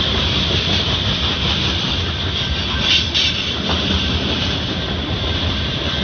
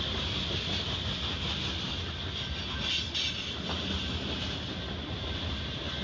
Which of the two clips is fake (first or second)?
first